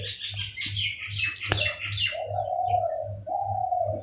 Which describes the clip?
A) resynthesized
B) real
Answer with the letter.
B